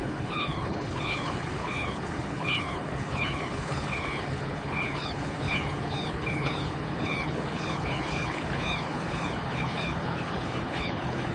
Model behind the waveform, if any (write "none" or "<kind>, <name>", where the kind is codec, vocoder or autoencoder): codec, HILCodec